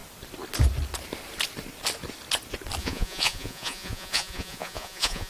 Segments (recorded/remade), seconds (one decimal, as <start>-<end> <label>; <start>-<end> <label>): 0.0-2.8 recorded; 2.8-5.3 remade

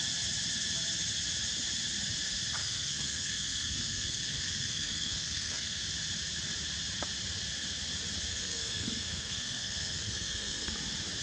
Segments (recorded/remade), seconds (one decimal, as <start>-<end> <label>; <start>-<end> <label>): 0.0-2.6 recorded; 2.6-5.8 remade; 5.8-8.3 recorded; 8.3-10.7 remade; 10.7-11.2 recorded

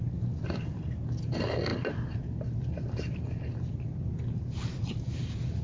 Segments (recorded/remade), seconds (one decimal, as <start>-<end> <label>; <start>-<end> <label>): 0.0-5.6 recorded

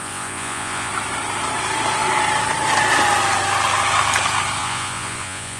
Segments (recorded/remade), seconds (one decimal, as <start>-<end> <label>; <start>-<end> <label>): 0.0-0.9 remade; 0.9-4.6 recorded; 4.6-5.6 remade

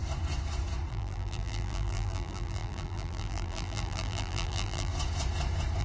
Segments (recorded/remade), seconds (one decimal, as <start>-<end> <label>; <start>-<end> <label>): 0.0-0.9 recorded; 0.9-4.9 remade; 4.9-5.8 recorded

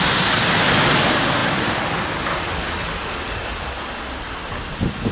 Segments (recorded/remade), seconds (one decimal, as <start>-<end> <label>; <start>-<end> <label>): 0.0-5.1 recorded

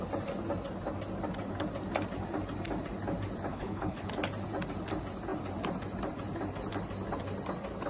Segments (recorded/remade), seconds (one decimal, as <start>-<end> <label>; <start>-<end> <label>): 0.0-3.5 recorded; 3.5-4.1 remade; 4.1-7.9 recorded

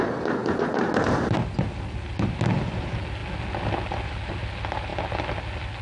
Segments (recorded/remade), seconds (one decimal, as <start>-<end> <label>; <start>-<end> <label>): 0.0-5.8 recorded